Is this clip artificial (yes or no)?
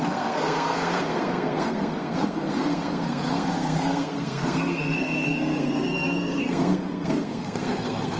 yes